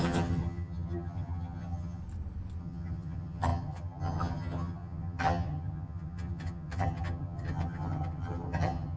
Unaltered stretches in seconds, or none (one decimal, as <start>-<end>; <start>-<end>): 2.0-2.6